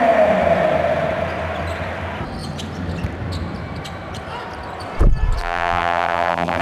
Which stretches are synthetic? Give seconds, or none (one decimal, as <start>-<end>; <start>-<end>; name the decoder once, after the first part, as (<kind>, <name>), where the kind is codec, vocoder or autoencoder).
5.4-6.6 (vocoder, BigVGAN v2)

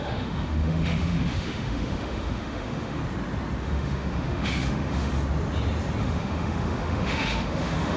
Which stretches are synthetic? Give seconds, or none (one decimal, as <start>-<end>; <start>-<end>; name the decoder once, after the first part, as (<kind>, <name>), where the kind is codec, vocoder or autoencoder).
0.0-3.0 (autoencoder, DAC-VAE); 3.6-5.1; 6.0-8.0